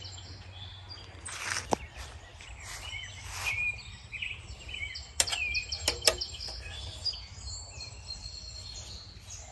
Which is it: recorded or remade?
recorded